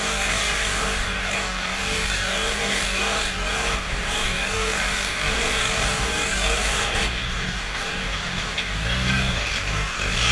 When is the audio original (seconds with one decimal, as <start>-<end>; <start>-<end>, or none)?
none